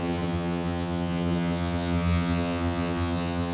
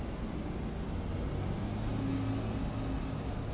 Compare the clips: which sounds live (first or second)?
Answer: second